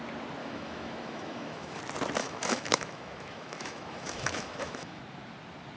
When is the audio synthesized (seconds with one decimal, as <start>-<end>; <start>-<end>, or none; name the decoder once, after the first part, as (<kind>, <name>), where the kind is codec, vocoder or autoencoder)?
0.4-1.8 (autoencoder, DAC-VAE); 2.2-5.0